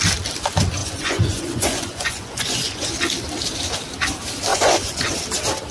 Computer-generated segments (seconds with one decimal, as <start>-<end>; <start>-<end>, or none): 0.8-2.9; 4.5-5.2